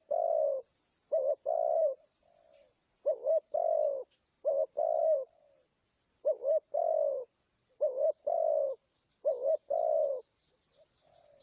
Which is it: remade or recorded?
recorded